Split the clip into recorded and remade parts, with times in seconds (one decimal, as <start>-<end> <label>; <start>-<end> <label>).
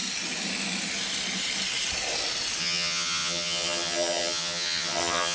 0.0-2.6 recorded; 2.6-5.3 remade